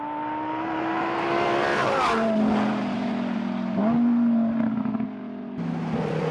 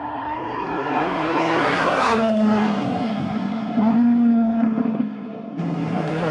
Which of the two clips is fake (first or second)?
second